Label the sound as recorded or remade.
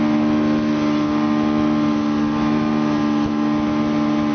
recorded